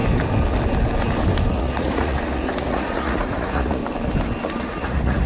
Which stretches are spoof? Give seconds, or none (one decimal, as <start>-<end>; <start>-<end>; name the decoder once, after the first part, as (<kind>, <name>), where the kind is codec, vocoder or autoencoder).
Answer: 1.5-3.8 (vocoder, Vocos); 4.6-5.3